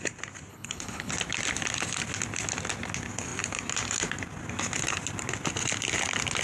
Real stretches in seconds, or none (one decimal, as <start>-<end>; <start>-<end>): 0.0-0.5; 1.1-6.4